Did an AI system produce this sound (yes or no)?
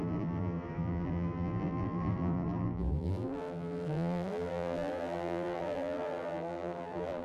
yes